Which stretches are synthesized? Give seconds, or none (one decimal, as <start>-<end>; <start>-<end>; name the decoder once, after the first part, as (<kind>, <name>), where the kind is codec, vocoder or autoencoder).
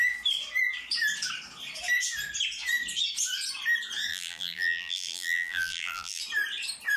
4.1-6.2 (vocoder, BigVGAN v2)